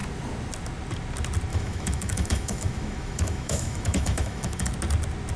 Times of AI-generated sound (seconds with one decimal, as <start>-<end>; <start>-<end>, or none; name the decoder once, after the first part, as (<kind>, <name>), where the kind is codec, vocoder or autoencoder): 1.5-4.7 (autoencoder, DAC-VAE)